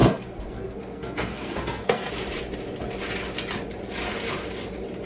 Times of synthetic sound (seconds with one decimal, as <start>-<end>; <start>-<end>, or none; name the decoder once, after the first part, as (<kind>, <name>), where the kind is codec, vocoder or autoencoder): 0.0-2.1 (codec, SNAC)